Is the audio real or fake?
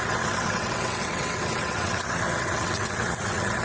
fake